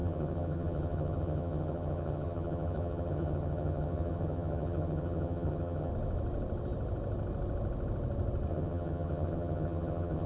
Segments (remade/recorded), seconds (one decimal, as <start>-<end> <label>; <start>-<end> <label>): 0.0-5.9 remade; 5.9-8.5 recorded; 8.5-10.3 remade